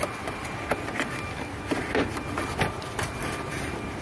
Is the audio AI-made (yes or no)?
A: no